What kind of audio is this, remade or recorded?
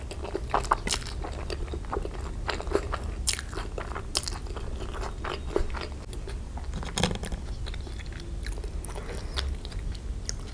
recorded